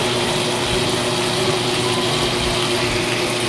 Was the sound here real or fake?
real